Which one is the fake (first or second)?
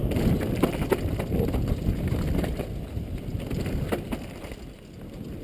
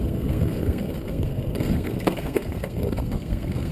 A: second